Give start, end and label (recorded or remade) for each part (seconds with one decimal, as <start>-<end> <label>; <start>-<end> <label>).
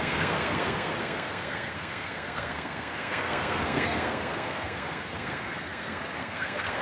0.0-6.8 remade